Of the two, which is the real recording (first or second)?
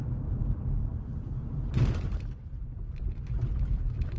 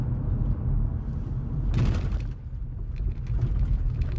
second